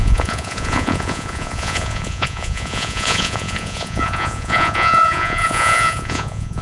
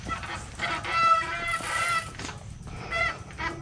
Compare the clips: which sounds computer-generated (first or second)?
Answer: first